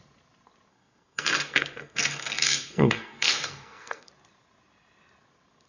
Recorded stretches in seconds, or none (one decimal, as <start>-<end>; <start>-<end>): 0.0-0.7; 4.1-5.7